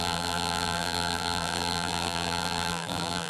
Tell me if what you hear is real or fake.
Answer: fake